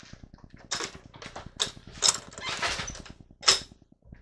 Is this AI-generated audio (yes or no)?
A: no